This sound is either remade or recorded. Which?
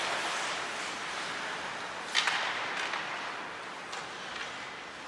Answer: recorded